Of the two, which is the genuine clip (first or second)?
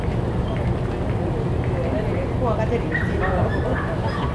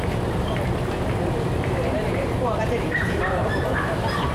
first